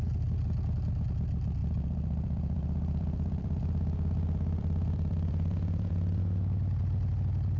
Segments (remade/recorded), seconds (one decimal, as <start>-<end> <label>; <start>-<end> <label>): 0.0-1.6 recorded; 1.6-6.2 remade; 6.2-7.6 recorded